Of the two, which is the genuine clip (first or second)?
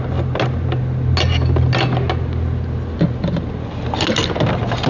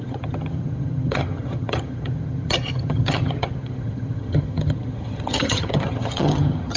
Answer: first